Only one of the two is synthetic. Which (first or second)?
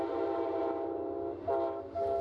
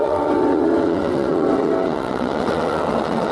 second